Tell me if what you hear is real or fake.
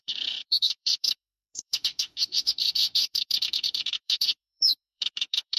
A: fake